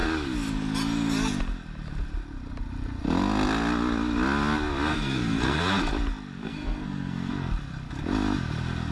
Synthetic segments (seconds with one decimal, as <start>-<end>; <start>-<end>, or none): 4.9-5.6; 6.4-7.3